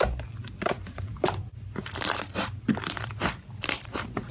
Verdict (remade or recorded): remade